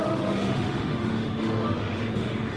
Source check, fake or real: fake